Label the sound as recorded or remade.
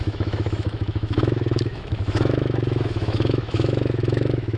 remade